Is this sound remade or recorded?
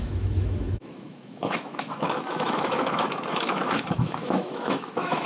remade